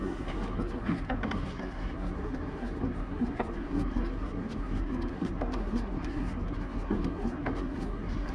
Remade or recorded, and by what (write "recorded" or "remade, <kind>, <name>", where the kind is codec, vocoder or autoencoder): remade, codec, SNAC